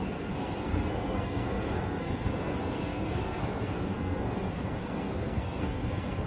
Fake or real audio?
fake